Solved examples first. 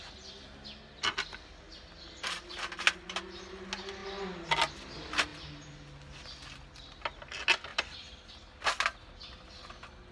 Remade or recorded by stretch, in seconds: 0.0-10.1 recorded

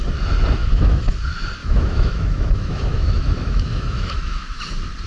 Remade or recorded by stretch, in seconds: 0.0-0.6 recorded; 0.6-1.1 remade; 1.1-1.6 recorded; 1.6-4.6 remade; 4.6-5.1 recorded

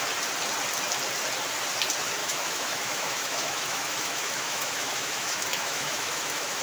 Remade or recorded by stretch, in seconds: 0.0-2.2 recorded; 2.2-6.6 remade

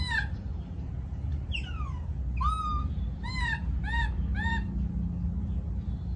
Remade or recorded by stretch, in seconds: 0.0-6.2 recorded

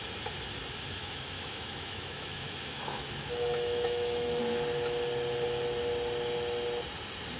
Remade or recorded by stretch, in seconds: 0.0-1.0 recorded; 1.0-4.4 remade; 4.4-7.4 recorded

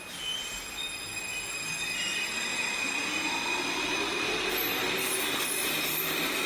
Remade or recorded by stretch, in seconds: 0.0-6.5 recorded

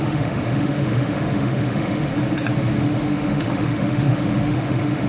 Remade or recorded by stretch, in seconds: 0.0-2.1 remade; 2.1-2.8 recorded; 2.8-5.1 remade

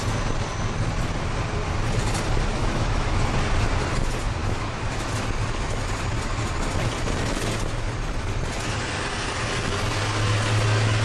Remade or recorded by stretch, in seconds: 0.0-2.6 recorded; 2.6-3.2 remade; 3.2-4.4 recorded; 4.4-5.2 remade; 5.2-11.0 recorded